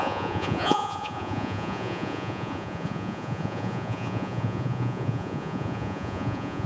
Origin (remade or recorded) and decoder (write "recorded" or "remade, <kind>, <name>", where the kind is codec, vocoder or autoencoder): remade, vocoder, Vocos